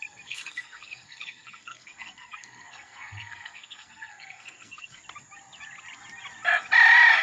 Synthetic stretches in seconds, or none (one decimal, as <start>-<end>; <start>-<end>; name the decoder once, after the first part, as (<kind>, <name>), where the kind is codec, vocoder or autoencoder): 0.0-5.0 (codec, SNAC)